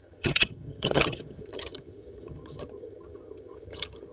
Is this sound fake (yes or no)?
yes